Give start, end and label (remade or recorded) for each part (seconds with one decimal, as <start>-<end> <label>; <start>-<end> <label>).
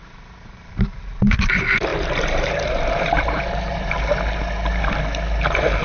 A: 0.0-1.5 remade; 1.5-1.9 recorded; 1.9-4.1 remade; 4.1-5.8 recorded